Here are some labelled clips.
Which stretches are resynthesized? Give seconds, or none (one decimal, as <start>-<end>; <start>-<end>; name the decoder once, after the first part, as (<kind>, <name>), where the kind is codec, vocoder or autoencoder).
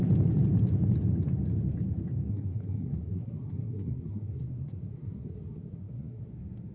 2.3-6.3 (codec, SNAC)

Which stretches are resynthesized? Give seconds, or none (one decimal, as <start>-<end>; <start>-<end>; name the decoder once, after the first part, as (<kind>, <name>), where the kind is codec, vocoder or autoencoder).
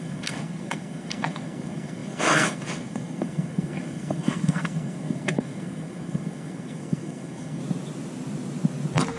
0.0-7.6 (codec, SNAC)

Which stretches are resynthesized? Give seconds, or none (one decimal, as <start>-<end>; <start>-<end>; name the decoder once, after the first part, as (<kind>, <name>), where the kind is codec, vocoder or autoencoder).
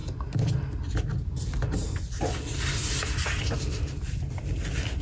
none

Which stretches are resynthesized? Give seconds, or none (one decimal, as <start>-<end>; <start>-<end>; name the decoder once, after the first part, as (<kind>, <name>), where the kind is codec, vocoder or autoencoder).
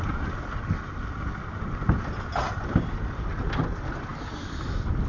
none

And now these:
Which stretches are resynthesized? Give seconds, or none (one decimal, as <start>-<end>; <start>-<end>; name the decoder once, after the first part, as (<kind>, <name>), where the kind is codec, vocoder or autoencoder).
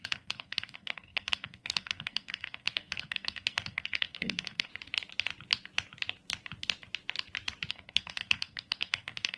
0.0-4.7 (codec, SNAC); 7.7-9.4